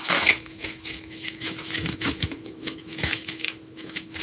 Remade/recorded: remade